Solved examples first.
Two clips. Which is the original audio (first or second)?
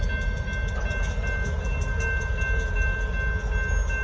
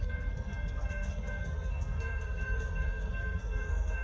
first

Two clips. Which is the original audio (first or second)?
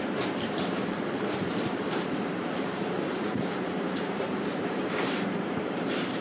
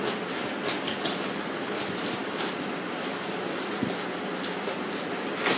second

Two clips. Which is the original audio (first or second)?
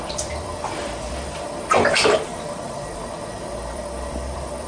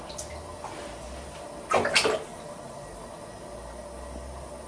second